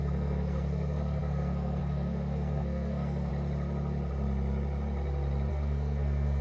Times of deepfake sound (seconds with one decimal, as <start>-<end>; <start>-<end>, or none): 0.0-3.3; 5.5-6.4